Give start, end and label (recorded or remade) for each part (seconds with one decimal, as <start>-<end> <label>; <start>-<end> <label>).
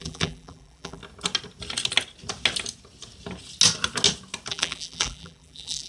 0.0-1.0 remade; 1.0-4.5 recorded; 4.5-5.9 remade